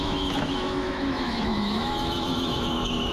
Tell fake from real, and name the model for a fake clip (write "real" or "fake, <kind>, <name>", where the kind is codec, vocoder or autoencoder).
fake, autoencoder, DAC-VAE